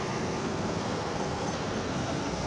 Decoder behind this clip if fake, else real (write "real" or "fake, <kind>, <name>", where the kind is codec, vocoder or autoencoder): fake, codec, SNAC